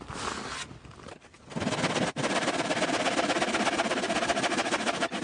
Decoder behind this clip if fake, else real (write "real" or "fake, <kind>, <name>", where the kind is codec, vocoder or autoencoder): real